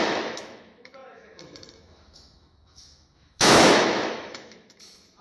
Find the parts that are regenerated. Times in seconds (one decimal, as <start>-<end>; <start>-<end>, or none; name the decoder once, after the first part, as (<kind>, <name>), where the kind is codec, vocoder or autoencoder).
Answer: 0.0-5.2 (autoencoder, DAC-VAE)